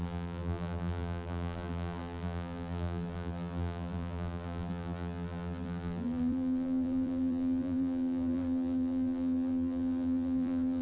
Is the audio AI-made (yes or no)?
yes